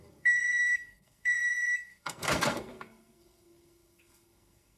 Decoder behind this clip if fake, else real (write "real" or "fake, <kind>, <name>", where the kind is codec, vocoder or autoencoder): fake, codec, SNAC